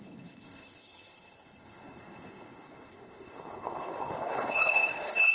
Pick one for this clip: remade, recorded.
remade